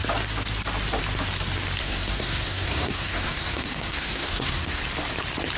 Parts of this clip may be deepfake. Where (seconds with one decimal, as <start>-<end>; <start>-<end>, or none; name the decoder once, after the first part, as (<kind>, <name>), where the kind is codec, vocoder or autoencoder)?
1.8-4.8 (codec, SNAC)